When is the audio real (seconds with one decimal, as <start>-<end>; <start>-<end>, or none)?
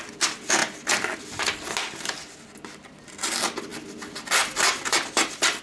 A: 0.0-5.6